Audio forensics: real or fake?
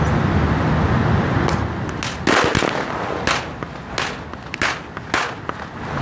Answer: real